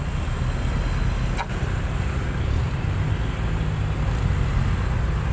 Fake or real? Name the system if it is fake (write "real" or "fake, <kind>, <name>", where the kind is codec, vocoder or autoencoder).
real